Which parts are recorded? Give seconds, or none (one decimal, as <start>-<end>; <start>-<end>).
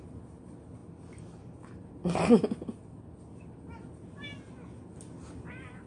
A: 0.0-5.9